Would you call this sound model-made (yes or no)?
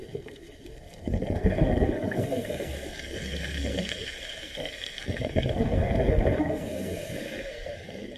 yes